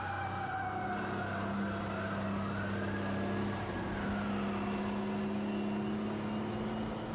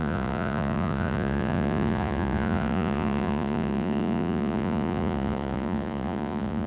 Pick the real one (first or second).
first